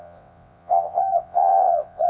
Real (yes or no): no